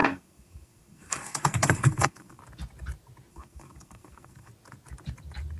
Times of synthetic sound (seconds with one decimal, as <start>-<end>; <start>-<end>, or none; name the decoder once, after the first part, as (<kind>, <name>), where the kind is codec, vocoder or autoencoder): 0.0-2.4 (codec, SNAC); 3.3-4.5